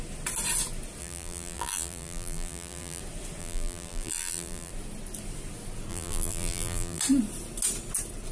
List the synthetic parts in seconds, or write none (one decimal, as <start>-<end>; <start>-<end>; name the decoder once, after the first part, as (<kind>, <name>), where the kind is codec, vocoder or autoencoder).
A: 1.0-3.0 (vocoder, BigVGAN v2); 3.4-4.7; 5.9-7.0